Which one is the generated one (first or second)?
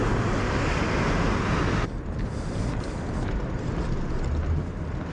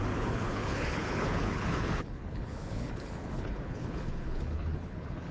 second